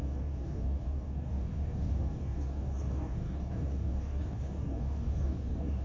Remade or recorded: remade